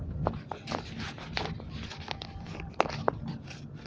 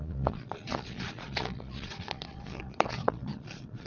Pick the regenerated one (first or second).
second